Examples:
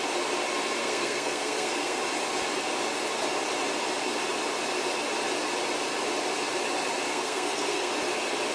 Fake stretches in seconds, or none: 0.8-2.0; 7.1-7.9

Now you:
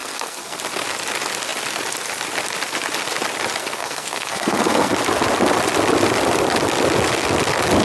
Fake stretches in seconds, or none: 0.0-0.6; 3.6-4.9

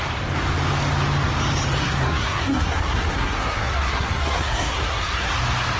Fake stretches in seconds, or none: 1.8-5.3

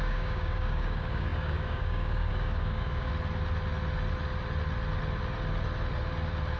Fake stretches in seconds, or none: 0.0-3.1

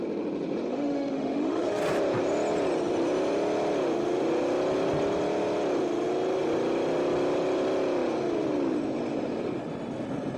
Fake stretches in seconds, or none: 0.7-1.8